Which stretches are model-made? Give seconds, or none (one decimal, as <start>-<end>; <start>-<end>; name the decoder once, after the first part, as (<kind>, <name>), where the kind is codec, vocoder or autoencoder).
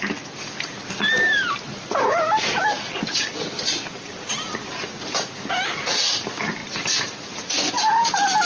none